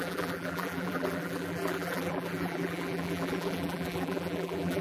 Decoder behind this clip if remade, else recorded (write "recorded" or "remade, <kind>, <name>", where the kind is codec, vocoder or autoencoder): remade, vocoder, BigVGAN v2